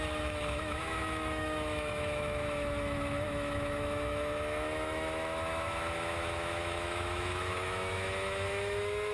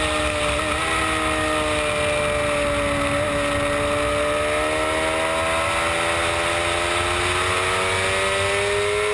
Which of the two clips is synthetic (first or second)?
first